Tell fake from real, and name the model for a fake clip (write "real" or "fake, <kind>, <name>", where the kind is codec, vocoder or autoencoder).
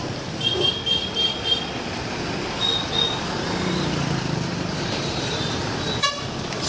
real